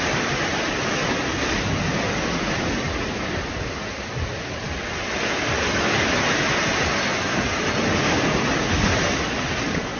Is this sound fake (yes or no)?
no